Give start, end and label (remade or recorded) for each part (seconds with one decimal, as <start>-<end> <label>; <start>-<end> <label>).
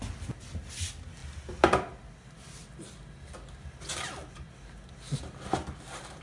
0.0-6.2 recorded